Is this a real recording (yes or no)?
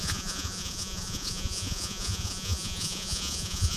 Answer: no